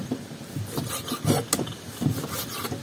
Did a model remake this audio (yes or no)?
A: no